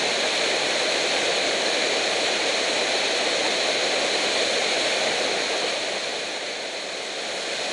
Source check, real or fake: real